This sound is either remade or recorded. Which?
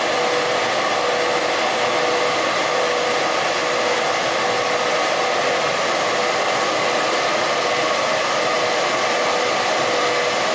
recorded